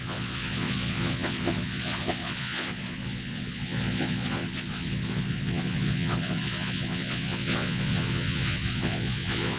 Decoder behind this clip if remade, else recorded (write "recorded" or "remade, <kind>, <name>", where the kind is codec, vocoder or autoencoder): remade, vocoder, Vocos